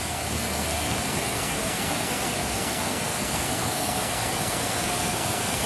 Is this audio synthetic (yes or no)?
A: yes